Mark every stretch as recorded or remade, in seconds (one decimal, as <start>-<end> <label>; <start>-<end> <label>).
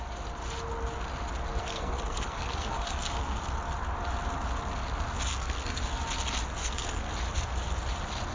0.0-1.6 recorded; 1.6-3.4 remade; 3.4-5.3 recorded; 5.3-5.8 remade; 5.8-6.6 recorded; 6.6-7.1 remade; 7.1-8.3 recorded